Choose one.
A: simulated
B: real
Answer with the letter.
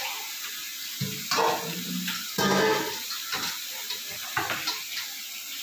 B